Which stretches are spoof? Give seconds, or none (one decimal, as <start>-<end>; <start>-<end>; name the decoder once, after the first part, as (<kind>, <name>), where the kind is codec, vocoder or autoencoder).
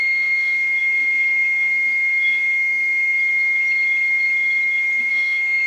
0.0-3.2 (codec, SNAC); 5.0-5.7